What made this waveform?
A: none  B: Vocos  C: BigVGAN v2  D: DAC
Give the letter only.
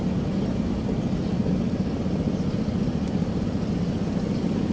A